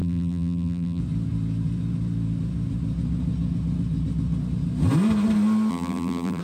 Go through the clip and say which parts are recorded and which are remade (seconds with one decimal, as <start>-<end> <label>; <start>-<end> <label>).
0.0-1.0 remade; 1.0-5.7 recorded; 5.7-6.4 remade